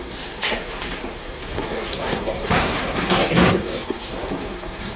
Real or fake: fake